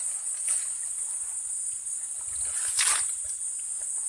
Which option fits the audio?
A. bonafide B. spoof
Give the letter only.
A